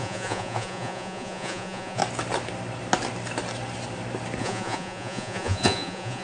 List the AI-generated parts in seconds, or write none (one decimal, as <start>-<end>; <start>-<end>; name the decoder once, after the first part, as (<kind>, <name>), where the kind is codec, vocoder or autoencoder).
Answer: 0.0-2.0 (vocoder, Vocos); 4.4-6.2